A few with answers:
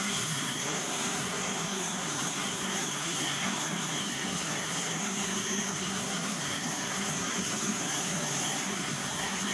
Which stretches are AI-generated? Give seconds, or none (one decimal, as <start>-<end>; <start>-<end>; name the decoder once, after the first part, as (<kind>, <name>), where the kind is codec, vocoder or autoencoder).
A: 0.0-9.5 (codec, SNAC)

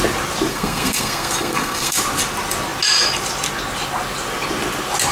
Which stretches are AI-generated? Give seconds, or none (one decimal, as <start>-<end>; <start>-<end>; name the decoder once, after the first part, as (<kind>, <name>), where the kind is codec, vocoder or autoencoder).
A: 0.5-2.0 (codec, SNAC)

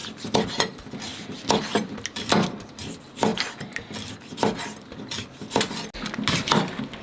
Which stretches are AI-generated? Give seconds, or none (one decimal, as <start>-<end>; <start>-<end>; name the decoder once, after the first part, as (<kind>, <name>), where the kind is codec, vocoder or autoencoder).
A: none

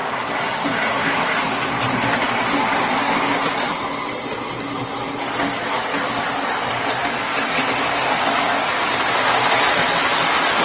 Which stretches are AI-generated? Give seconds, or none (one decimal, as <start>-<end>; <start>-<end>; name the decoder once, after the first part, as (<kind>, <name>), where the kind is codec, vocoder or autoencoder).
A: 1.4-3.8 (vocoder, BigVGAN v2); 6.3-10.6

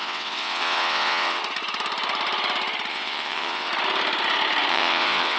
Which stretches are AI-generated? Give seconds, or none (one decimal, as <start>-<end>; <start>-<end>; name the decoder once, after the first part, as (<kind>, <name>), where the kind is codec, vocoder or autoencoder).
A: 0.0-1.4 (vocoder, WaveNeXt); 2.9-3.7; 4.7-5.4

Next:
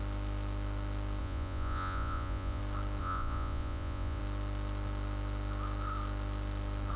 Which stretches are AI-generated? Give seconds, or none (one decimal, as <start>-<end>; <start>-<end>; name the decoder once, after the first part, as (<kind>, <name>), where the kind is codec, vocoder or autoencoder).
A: 1.2-2.6 (vocoder, Vocos); 3.0-4.2

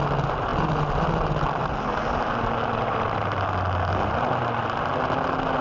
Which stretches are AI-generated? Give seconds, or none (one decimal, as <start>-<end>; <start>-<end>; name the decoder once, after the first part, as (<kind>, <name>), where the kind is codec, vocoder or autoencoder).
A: none